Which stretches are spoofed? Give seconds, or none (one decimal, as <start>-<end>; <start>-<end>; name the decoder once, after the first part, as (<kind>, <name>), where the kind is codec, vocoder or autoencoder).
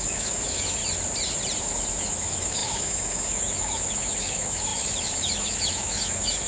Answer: 0.0-0.8 (autoencoder, DAC-VAE); 1.6-6.5